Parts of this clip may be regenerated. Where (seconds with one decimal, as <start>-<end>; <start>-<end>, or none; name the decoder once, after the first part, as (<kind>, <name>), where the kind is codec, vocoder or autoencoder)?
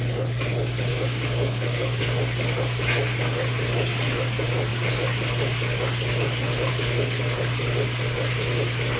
0.9-2.0 (codec, DAC)